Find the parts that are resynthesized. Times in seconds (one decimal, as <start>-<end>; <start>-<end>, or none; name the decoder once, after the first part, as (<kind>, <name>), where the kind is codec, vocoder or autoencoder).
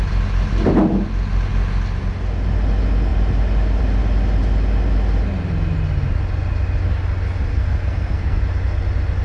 7.5-8.4 (codec, SNAC)